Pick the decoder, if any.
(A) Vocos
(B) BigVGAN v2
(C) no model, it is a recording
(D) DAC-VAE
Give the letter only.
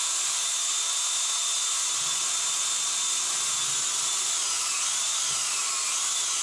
C